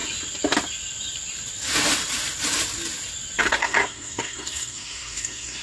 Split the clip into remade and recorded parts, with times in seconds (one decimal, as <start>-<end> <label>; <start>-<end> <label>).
0.0-3.4 recorded; 3.4-5.6 remade